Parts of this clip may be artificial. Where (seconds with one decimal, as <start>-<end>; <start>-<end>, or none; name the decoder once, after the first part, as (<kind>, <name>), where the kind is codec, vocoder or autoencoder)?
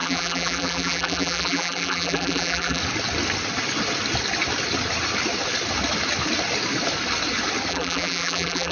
0.0-2.8 (vocoder, BigVGAN v2); 7.7-8.7